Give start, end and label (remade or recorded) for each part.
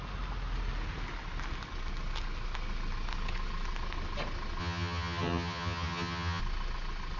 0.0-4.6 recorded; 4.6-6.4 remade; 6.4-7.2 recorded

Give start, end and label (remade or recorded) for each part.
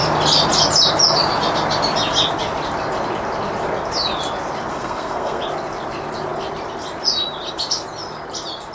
0.0-4.7 recorded; 4.7-5.4 remade; 5.4-8.7 recorded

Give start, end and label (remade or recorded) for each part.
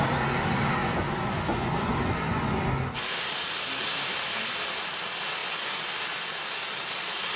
0.0-0.8 recorded; 0.8-2.6 remade; 2.6-7.4 recorded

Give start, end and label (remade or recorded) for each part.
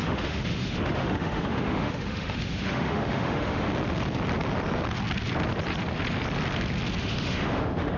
0.0-3.7 remade; 3.7-7.0 recorded; 7.0-8.0 remade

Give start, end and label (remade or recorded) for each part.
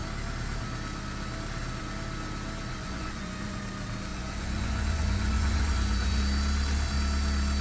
0.0-2.7 recorded; 2.7-3.6 remade; 3.6-4.1 recorded; 4.1-6.2 remade; 6.2-7.6 recorded